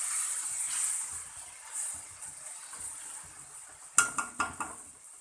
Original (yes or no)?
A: yes